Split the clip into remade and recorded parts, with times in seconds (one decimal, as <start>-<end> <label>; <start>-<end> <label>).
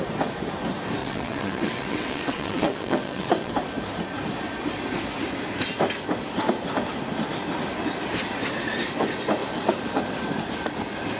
0.0-1.0 recorded; 1.0-3.5 remade; 3.5-11.2 recorded